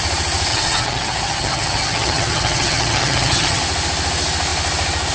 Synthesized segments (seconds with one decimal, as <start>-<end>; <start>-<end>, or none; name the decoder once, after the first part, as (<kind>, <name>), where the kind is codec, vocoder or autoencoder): 0.5-3.6 (vocoder, HiFi-GAN)